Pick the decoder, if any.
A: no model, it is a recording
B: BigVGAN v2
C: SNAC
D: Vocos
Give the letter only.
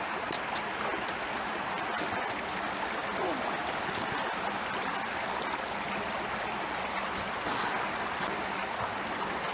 A